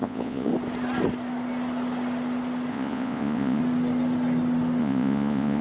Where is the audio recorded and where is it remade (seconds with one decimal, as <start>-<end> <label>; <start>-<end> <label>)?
0.0-0.5 remade; 0.5-2.7 recorded; 2.7-3.6 remade; 3.6-4.8 recorded; 4.8-5.6 remade